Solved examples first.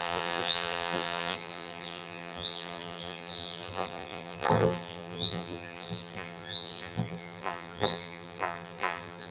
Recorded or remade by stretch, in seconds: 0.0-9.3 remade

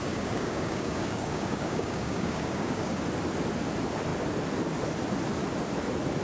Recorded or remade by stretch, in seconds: 0.0-3.0 remade; 3.0-6.2 recorded

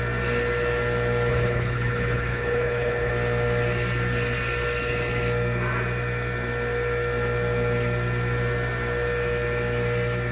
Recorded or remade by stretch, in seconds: 0.0-1.3 recorded; 1.3-3.1 remade; 3.1-10.3 recorded

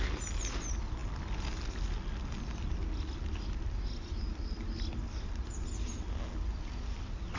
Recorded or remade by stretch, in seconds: 0.0-7.4 recorded

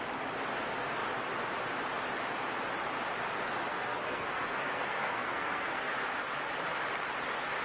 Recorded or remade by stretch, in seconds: 0.0-3.7 recorded; 3.7-5.9 remade; 5.9-7.6 recorded

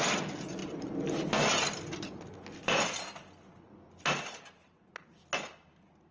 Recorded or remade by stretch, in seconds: 0.0-6.1 recorded

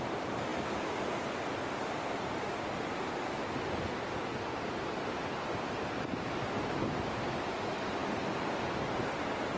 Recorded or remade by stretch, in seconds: 0.0-9.6 recorded

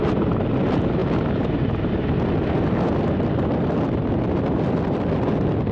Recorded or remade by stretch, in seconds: 0.0-5.7 recorded